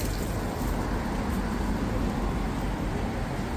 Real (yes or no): yes